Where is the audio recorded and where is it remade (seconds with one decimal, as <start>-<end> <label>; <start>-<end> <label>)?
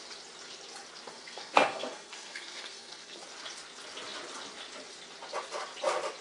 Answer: 0.0-1.1 recorded; 1.1-3.2 remade; 3.2-6.2 recorded